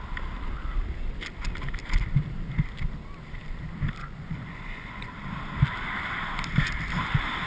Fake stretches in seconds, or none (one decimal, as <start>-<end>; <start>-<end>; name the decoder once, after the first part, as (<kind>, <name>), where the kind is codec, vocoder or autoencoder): 4.0-5.1 (vocoder, Vocos)